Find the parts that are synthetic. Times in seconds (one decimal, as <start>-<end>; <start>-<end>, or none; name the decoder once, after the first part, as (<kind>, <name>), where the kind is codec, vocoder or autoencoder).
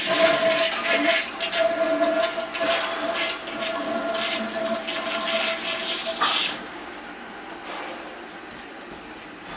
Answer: 6.4-6.9 (codec, DAC)